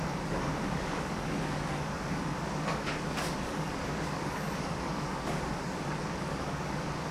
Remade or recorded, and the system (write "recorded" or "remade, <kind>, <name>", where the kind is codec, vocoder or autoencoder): remade, codec, DAC